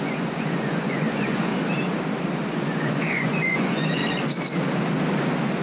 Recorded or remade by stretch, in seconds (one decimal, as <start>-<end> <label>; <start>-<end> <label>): 0.0-1.5 remade; 1.5-2.5 recorded; 2.5-4.0 remade; 4.0-5.6 recorded